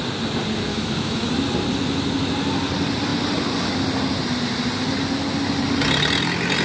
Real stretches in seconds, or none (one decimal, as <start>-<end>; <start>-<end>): 0.0-0.7; 1.3-6.6